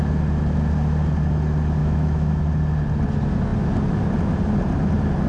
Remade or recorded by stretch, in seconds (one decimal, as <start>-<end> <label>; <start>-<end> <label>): 0.0-1.8 recorded; 1.8-2.4 remade; 2.4-5.3 recorded